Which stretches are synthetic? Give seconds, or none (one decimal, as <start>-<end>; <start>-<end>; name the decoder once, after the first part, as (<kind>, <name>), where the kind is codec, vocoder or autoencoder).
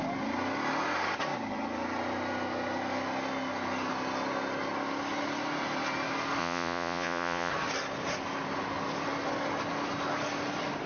6.4-7.5 (vocoder, Vocos)